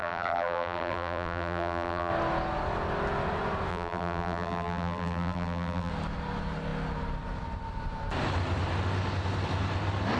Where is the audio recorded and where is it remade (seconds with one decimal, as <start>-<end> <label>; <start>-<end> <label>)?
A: 0.0-2.1 remade; 2.1-3.7 recorded; 3.7-5.9 remade; 5.9-10.2 recorded